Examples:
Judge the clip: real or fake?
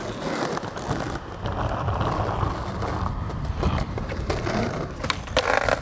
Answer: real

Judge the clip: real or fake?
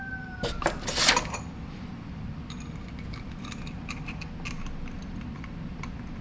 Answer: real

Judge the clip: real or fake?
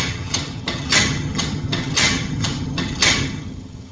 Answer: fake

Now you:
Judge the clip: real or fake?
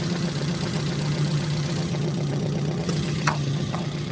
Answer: fake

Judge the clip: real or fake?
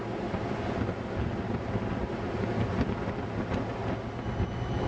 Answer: real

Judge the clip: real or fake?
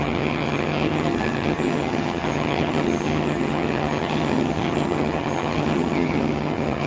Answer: fake